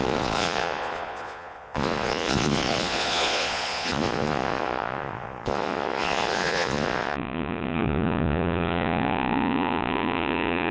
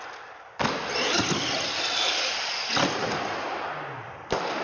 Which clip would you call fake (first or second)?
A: first